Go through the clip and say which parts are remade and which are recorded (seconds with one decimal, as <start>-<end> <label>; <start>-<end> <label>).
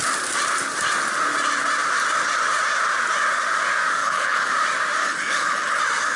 0.0-4.0 recorded; 4.0-4.5 remade; 4.5-5.0 recorded; 5.0-5.8 remade; 5.8-6.2 recorded